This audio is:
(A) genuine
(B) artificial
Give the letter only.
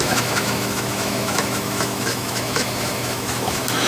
B